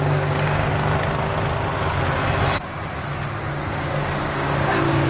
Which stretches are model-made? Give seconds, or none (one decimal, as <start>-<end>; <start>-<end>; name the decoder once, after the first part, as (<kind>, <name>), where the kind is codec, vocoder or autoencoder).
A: 0.0-0.6 (codec, DAC); 3.7-5.1